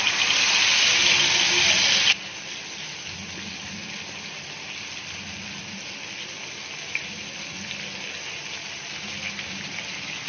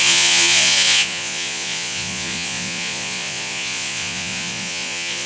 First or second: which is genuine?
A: first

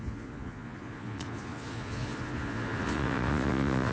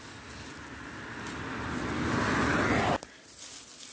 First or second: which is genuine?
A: second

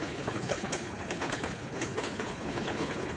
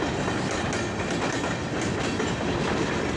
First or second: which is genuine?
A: second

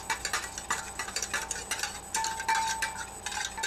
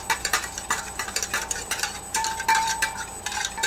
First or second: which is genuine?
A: first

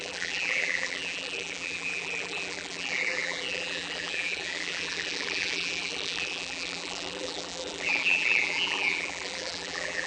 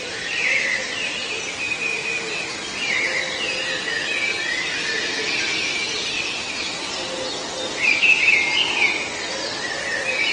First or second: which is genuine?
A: second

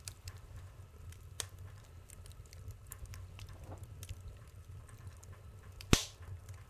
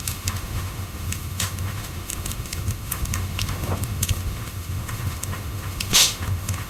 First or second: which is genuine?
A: first